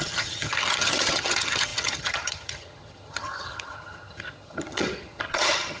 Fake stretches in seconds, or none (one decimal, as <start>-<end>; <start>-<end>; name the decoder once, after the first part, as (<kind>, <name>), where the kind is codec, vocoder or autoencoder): 0.0-5.8 (vocoder, HiFi-GAN)